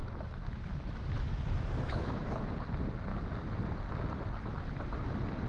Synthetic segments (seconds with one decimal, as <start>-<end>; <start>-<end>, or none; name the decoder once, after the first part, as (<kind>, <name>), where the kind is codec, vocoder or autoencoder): 0.0-2.5 (autoencoder, DAC-VAE)